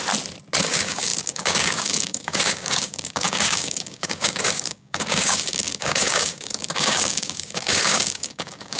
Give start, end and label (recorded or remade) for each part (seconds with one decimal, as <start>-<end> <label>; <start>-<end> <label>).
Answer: 0.0-0.6 recorded; 0.6-8.8 remade